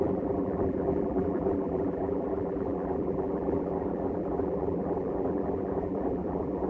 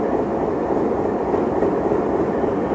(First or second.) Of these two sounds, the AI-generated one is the first